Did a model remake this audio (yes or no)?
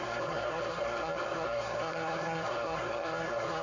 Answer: yes